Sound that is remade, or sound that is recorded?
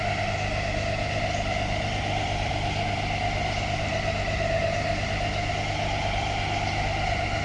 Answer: recorded